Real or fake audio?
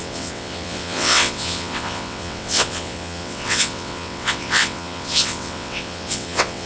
fake